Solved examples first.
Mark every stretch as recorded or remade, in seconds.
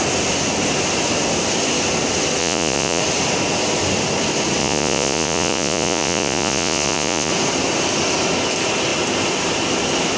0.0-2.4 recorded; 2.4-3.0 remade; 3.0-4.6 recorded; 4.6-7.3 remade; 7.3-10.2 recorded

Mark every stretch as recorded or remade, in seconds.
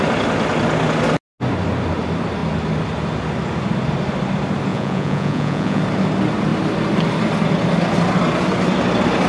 0.0-4.7 recorded; 4.7-5.8 remade; 5.8-9.3 recorded